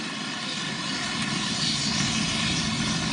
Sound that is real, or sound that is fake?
real